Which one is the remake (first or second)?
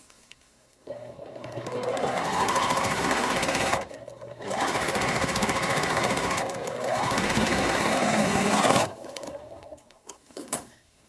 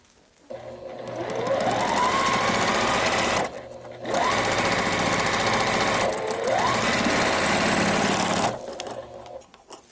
first